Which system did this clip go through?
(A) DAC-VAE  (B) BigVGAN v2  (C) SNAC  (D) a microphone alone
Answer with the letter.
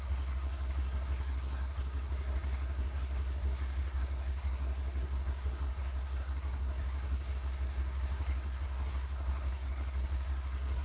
C